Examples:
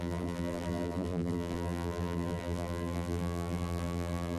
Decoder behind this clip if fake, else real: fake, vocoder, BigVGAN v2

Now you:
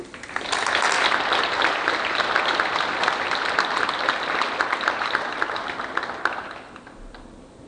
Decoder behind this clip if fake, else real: real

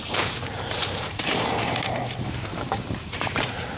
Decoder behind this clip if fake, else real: fake, vocoder, BigVGAN v2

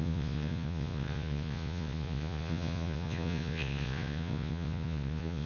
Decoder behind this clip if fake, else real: fake, vocoder, Vocos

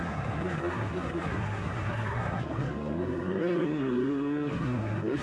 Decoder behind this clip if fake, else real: fake, codec, SNAC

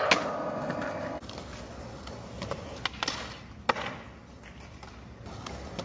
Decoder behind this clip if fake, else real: real